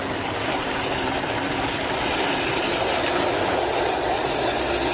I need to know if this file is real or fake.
real